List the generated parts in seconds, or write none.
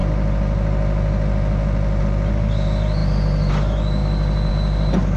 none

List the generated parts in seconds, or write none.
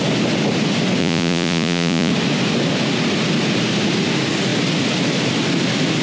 1.0-2.1 (vocoder, Vocos)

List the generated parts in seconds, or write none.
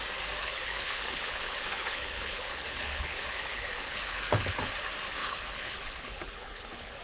0.4-4.6 (codec, HILCodec); 5.2-7.0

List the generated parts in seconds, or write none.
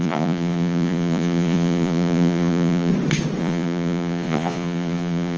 0.0-2.9 (vocoder, Vocos); 3.4-5.4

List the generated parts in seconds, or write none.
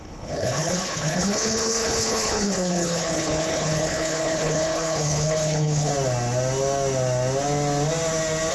0.0-5.9 (codec, HILCodec)